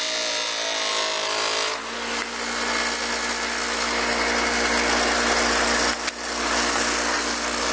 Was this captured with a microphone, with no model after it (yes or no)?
yes